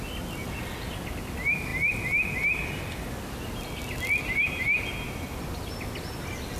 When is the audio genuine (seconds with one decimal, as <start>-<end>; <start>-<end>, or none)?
0.0-6.6